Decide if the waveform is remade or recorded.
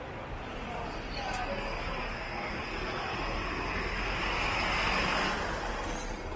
recorded